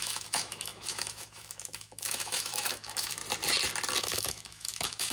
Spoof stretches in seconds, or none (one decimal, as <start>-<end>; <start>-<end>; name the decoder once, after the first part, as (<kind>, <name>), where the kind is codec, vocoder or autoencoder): 0.0-3.2 (autoencoder, DAC-VAE); 4.0-5.1